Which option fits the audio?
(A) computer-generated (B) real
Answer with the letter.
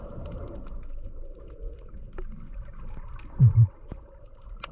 B